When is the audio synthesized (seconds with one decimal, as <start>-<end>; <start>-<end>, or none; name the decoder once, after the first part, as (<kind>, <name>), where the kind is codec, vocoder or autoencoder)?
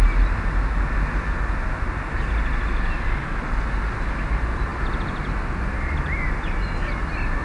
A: none